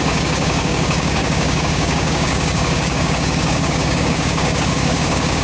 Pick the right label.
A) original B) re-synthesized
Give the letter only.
B